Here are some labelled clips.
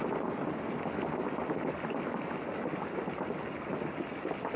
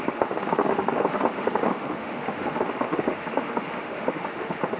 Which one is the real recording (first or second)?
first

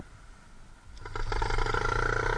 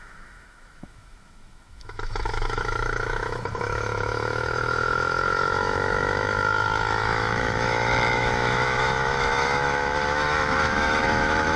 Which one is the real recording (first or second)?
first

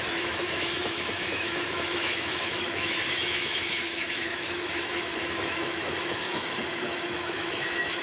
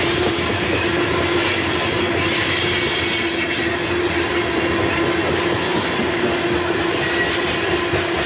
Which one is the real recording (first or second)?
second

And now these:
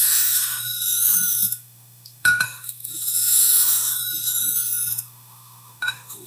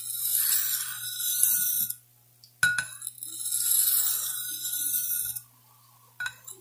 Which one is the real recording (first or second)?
second